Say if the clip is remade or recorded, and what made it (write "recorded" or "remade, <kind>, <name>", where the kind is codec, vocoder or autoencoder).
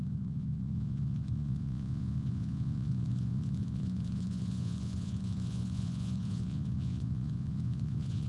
remade, vocoder, Vocos